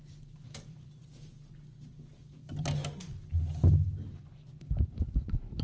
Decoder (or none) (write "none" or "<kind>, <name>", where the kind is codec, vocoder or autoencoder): none